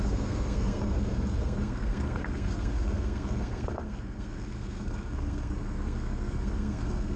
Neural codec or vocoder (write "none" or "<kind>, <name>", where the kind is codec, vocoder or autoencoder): codec, SNAC